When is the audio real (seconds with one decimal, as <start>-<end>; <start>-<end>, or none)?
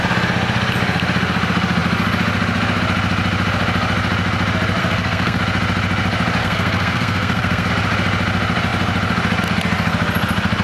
0.0-4.8; 5.4-6.4; 7.7-10.6